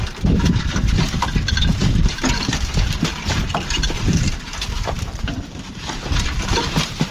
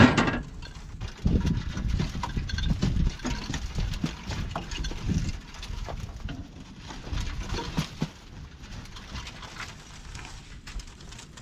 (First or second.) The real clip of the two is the second